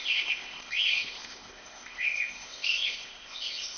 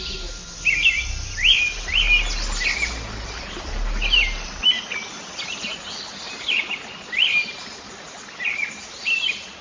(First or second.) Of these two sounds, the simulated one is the first